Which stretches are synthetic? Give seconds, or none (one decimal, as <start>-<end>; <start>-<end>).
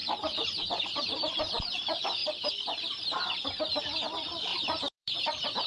0.0-2.2; 3.8-5.7